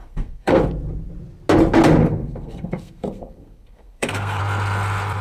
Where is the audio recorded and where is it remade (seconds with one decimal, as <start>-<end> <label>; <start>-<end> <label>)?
0.0-0.6 remade; 0.6-2.0 recorded; 2.0-4.4 remade; 4.4-5.2 recorded